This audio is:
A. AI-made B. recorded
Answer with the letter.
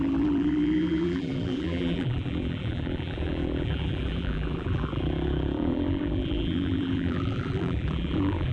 A